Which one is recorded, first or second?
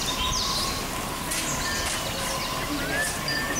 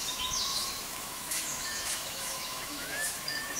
first